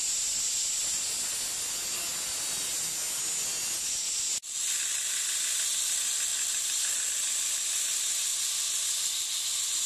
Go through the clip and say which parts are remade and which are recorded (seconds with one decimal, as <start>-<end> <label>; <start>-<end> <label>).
0.0-9.9 recorded